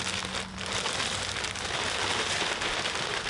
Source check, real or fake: real